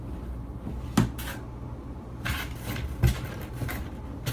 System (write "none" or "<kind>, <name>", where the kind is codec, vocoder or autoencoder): none